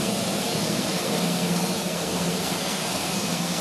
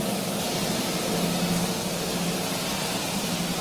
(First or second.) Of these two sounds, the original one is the second